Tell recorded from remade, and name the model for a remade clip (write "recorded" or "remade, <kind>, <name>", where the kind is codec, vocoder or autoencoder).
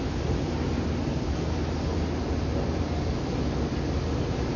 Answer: recorded